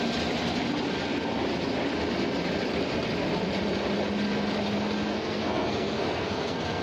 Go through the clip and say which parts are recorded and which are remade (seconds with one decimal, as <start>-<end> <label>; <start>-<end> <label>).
0.0-5.1 recorded; 5.1-6.8 remade